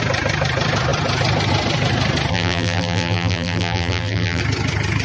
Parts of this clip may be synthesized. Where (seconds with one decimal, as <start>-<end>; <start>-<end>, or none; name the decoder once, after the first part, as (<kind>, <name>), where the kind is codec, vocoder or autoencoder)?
2.3-4.4 (vocoder, BigVGAN v2)